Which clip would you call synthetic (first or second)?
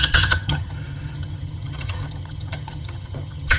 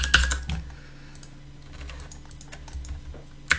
first